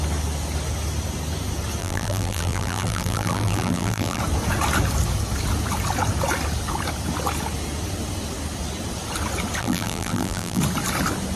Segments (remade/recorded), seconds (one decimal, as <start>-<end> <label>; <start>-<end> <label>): 0.0-1.8 recorded; 1.8-4.2 remade; 4.2-9.6 recorded; 9.6-10.6 remade; 10.6-11.4 recorded